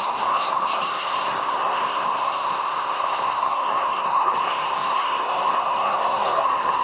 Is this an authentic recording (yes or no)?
no